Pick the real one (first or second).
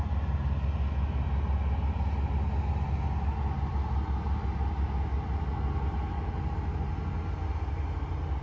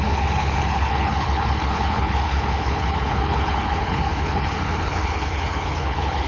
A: first